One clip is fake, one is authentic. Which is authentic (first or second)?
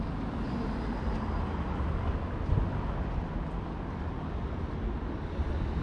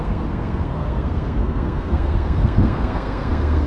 first